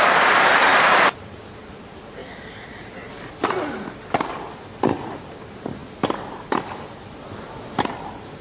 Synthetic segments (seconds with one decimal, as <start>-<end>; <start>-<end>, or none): none

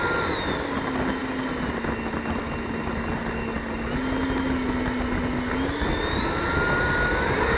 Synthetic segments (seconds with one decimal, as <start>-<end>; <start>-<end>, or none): none

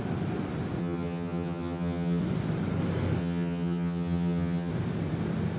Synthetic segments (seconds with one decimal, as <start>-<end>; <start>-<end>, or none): 0.8-2.2; 3.2-4.7

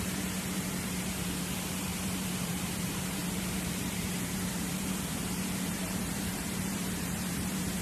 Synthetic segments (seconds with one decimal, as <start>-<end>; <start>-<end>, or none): 0.0-7.8